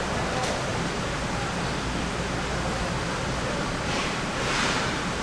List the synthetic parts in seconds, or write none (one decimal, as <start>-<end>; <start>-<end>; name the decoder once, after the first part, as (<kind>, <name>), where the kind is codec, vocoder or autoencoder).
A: 0.0-0.7 (vocoder, BigVGAN v2); 3.8-5.2